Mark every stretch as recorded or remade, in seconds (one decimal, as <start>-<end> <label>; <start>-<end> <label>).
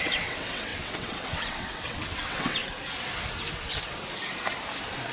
0.0-2.6 remade; 2.6-5.1 recorded